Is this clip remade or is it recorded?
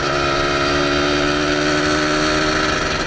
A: recorded